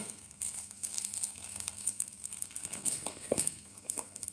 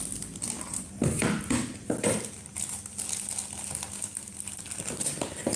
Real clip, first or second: second